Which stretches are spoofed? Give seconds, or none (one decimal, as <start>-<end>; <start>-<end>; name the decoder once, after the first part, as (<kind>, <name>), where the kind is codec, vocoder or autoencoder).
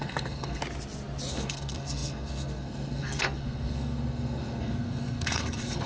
0.0-0.6 (codec, SNAC); 1.3-5.9